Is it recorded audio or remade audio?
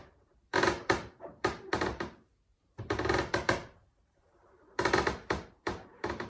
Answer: remade